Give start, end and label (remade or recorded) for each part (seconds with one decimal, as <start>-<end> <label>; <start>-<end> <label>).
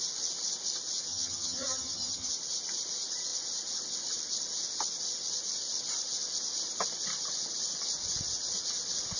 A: 0.0-1.1 recorded; 1.1-2.3 remade; 2.3-9.2 recorded